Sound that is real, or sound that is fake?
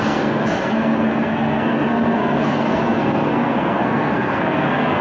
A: fake